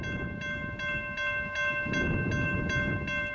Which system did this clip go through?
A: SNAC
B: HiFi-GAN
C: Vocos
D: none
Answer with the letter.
D